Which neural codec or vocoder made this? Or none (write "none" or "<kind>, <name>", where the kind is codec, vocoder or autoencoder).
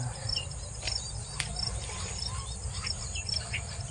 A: vocoder, BigVGAN v2